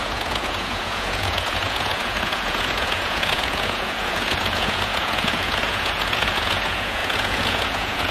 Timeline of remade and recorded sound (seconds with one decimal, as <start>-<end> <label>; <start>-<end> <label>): 0.0-8.1 remade